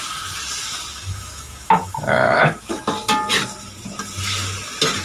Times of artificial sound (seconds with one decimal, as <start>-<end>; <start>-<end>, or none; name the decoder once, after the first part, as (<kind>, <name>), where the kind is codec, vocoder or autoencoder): 0.9-2.8 (autoencoder, DAC-VAE)